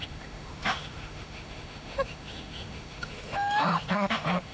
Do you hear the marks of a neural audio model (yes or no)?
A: yes